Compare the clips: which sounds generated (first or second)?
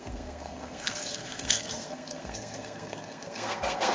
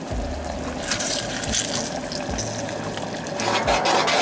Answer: first